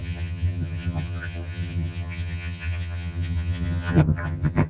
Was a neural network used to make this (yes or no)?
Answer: yes